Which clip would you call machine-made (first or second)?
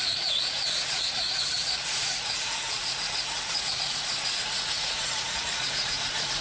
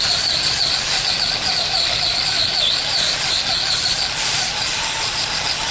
first